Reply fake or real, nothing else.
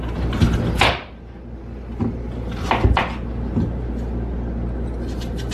real